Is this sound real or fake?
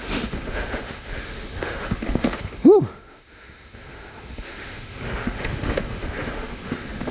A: fake